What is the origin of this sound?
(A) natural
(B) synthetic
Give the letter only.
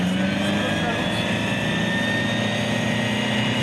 A